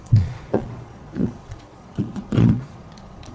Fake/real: fake